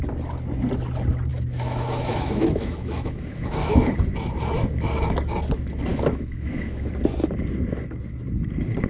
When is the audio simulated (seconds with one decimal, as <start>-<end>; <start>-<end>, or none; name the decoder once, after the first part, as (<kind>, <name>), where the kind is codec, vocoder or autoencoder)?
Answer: 1.3-3.9 (autoencoder, DAC-VAE); 5.9-6.9

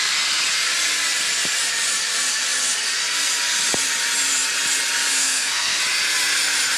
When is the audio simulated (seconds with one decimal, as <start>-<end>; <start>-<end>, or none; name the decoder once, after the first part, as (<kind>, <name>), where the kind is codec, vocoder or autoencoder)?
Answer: 5.2-5.8 (codec, SNAC)

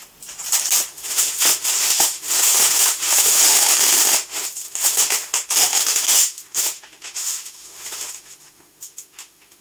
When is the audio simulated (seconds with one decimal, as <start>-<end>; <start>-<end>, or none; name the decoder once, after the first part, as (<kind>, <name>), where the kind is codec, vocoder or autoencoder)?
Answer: 0.9-9.6 (autoencoder, DAC-VAE)

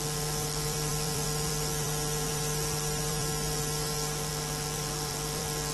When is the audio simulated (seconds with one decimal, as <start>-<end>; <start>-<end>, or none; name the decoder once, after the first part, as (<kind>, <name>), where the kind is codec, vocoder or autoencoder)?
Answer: 0.0-5.7 (vocoder, BigVGAN v2)

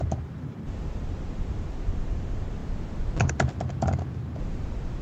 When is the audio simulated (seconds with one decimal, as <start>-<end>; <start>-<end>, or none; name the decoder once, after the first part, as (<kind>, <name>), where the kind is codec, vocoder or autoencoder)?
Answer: 0.0-2.6 (vocoder, BigVGAN v2); 4.2-5.0

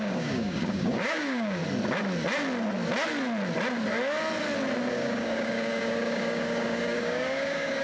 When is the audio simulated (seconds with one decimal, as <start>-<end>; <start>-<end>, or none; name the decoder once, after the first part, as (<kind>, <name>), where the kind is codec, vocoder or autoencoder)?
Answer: 0.0-1.6 (codec, DAC); 4.9-7.8